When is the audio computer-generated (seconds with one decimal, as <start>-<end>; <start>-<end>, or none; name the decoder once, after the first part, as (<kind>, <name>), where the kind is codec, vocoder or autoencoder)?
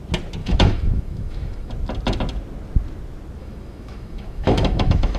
0.4-1.7 (autoencoder, DAC-VAE); 3.4-5.2